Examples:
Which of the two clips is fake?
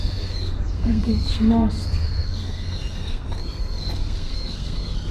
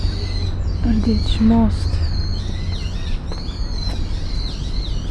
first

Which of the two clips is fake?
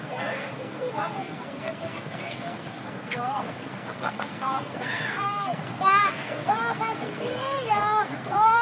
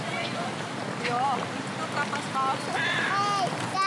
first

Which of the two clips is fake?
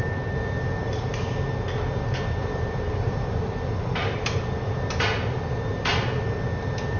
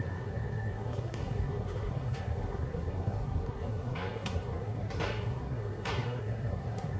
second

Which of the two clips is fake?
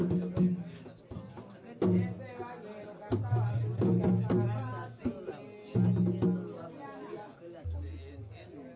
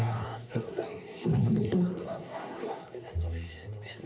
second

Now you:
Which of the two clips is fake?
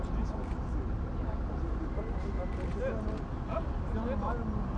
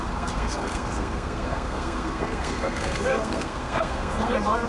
second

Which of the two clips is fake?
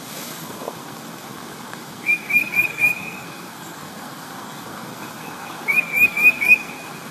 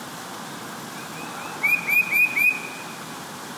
first